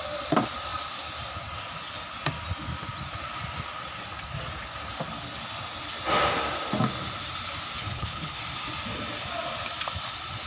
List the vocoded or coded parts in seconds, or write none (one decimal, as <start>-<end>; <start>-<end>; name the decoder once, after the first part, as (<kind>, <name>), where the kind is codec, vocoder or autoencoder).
7.8-8.4 (codec, HILCodec)